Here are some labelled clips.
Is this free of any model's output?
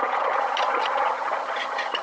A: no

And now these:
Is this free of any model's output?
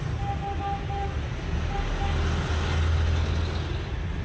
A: yes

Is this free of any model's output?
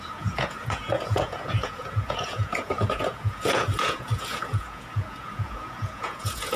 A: no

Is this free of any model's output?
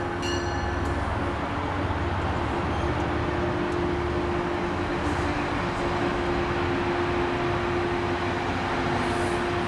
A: yes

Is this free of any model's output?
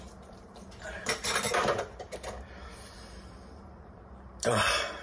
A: no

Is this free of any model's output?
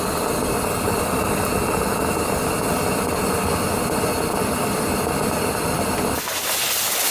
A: yes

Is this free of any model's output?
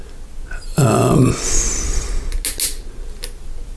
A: yes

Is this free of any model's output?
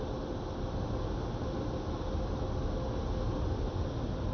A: yes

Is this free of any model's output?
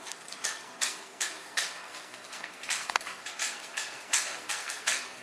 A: no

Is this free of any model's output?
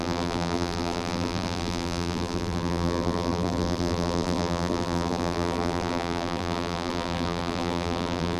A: no